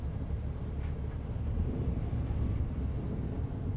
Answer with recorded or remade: remade